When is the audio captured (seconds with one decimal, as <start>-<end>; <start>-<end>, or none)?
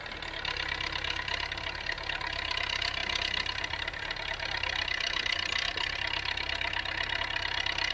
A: 0.0-7.9